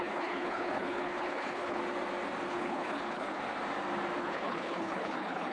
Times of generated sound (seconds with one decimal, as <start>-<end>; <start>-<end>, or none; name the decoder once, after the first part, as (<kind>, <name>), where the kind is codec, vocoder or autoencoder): 0.0-1.8 (codec, HILCodec); 2.5-3.4; 4.2-5.5